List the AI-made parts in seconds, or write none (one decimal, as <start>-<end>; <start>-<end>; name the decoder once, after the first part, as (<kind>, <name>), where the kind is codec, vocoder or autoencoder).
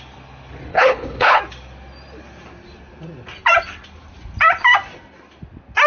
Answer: 0.7-1.4 (codec, HILCodec)